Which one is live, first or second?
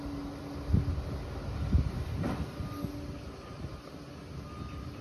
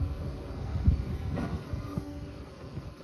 first